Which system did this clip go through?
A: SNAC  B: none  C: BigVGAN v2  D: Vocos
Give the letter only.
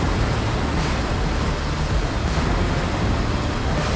B